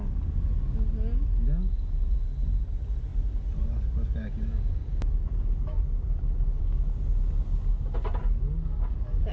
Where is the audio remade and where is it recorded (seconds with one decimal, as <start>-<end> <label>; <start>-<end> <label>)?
0.0-9.3 recorded